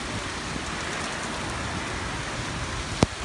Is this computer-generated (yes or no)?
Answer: no